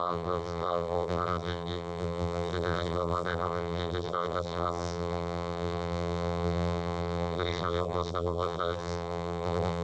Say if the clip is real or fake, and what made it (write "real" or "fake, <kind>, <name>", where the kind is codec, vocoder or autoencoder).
fake, vocoder, BigVGAN v2